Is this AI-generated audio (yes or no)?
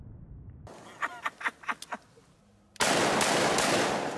no